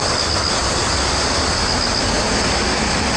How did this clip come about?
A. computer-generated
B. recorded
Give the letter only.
B